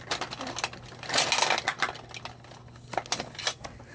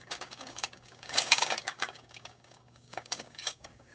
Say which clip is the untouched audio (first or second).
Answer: first